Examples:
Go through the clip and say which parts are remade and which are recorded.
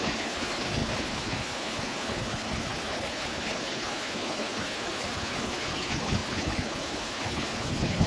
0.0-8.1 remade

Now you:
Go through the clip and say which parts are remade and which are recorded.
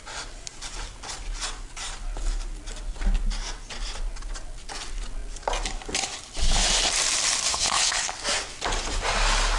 0.0-7.5 recorded; 7.5-8.1 remade; 8.1-9.6 recorded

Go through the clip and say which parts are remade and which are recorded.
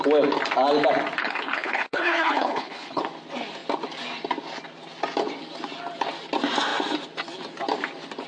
0.0-1.2 recorded; 1.2-3.0 remade; 3.0-8.3 recorded